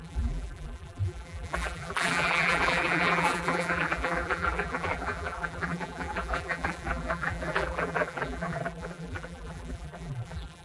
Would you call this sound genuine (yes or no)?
no